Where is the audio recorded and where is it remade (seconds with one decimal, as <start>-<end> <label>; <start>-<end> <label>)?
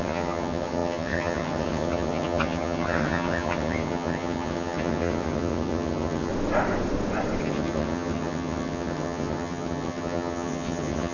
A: 0.0-6.3 remade; 6.3-7.4 recorded; 7.4-11.1 remade